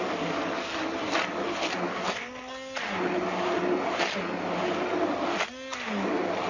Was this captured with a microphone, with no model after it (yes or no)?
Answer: yes